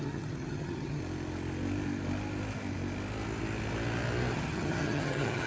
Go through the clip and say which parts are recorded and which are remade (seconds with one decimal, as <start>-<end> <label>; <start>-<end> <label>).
0.0-1.0 remade; 1.0-4.3 recorded; 4.3-5.5 remade